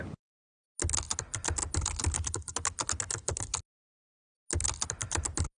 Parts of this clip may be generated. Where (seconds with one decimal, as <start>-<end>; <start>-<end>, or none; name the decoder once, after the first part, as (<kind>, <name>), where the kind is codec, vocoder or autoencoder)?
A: none